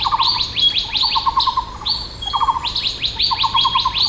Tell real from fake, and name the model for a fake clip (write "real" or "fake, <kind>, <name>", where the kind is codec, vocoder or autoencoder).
real